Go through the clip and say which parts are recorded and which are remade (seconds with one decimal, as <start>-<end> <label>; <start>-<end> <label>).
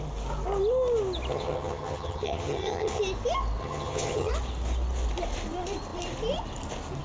0.0-1.3 recorded; 1.3-3.0 remade; 3.0-3.6 recorded; 3.6-4.3 remade; 4.3-7.0 recorded